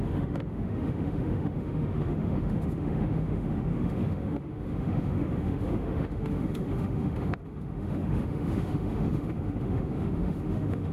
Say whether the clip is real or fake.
fake